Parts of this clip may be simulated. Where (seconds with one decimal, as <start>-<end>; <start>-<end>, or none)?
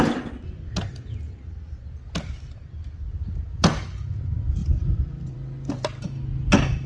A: 4.6-5.7